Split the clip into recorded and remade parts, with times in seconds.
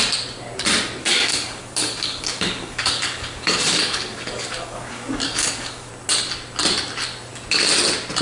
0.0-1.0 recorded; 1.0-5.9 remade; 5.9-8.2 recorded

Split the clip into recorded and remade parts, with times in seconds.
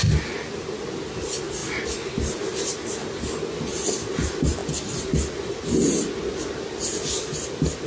0.0-7.9 recorded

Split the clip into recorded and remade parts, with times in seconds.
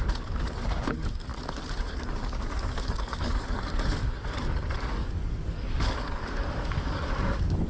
0.0-1.3 remade; 1.3-2.0 recorded; 2.0-7.7 remade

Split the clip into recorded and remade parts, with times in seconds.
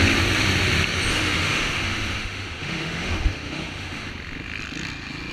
0.0-1.1 recorded; 1.1-4.1 remade; 4.1-5.3 recorded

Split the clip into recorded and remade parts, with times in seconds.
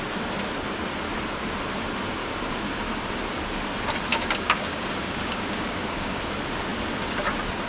0.0-2.2 recorded; 2.2-2.8 remade; 2.8-4.1 recorded; 4.1-6.2 remade; 6.2-7.7 recorded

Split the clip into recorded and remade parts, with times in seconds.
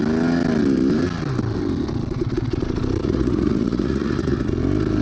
0.0-3.0 recorded; 3.0-4.5 remade; 4.5-5.0 recorded